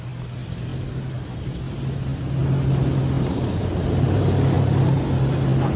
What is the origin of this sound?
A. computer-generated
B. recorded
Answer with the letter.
B